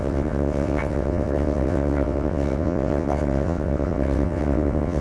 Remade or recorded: remade